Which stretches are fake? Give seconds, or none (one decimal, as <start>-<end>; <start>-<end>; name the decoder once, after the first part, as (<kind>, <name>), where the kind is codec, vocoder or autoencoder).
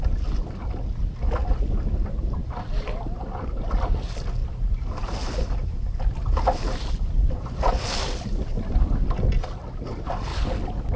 none